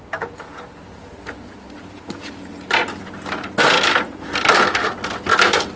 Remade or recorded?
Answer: recorded